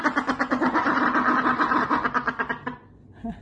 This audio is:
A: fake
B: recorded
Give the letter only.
B